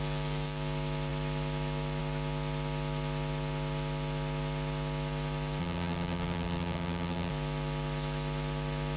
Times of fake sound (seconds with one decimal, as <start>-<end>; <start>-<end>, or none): 5.6-7.3